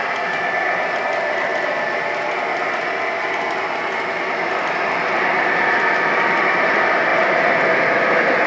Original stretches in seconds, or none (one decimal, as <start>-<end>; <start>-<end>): 0.0-8.5